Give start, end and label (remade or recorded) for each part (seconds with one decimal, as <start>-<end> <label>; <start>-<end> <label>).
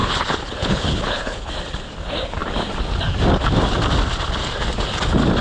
0.0-1.5 remade; 1.5-5.4 recorded